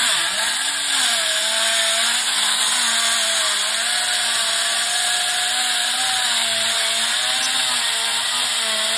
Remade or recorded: recorded